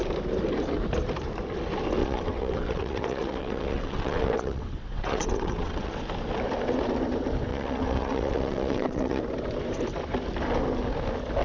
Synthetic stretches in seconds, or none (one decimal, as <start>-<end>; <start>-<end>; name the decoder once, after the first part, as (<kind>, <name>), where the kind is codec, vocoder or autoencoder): 2.0-5.9 (vocoder, WaveNeXt); 7.5-9.2